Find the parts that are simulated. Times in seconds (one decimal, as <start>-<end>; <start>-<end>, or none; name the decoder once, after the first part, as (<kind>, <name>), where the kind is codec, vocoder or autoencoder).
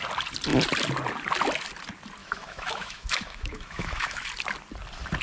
2.2-4.2 (autoencoder, DAC-VAE)